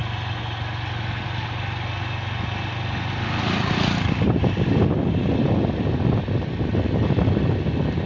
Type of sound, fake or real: real